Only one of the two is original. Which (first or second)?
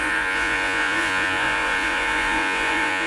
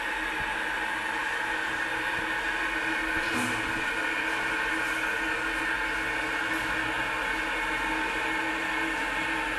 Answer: second